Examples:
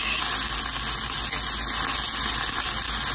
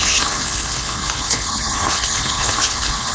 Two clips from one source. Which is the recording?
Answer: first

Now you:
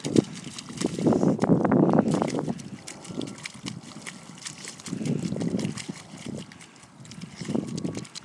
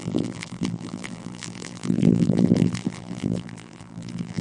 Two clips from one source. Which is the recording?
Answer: first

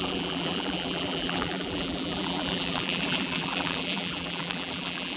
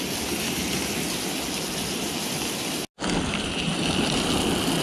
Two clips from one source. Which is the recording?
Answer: second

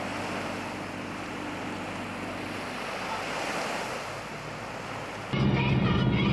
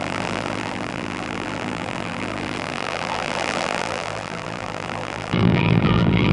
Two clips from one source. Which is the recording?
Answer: first